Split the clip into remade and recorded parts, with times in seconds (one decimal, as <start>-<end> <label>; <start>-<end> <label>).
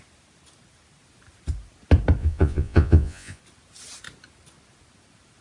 0.0-2.2 recorded; 2.2-3.4 remade; 3.4-5.4 recorded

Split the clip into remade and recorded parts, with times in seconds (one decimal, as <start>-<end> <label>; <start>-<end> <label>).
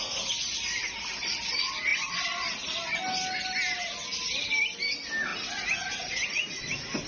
0.0-7.1 recorded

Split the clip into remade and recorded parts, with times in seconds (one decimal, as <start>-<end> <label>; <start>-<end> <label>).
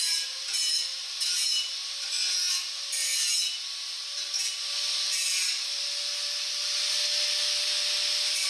0.0-8.5 recorded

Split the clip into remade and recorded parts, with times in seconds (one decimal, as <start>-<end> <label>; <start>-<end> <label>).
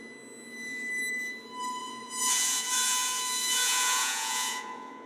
0.0-1.8 recorded; 1.8-5.1 remade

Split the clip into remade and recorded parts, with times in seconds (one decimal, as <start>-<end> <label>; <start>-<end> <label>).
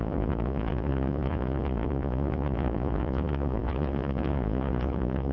0.0-5.3 remade